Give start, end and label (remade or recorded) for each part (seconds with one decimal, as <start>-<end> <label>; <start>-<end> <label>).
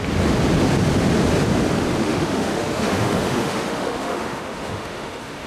0.0-2.0 recorded; 2.0-5.5 remade